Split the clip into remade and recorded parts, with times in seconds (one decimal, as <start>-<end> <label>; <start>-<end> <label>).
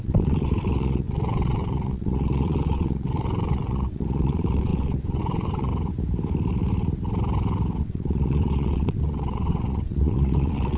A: 0.0-5.7 remade; 5.7-7.8 recorded; 7.8-10.8 remade